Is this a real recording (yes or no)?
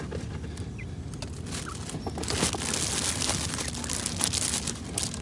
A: yes